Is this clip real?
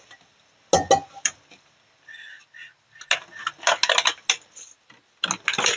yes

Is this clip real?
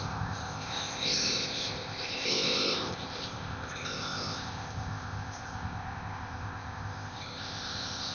no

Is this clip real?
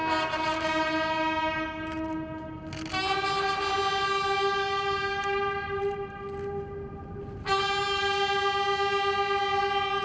yes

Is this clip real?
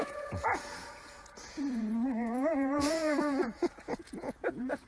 no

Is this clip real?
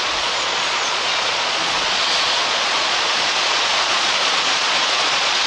no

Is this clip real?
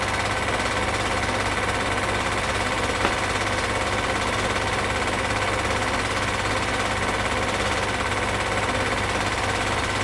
yes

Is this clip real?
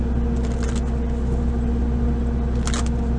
yes